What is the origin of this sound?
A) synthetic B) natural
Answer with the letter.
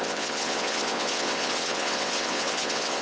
A